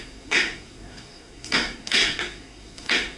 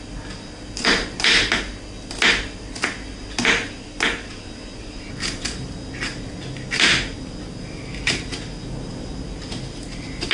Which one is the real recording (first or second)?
second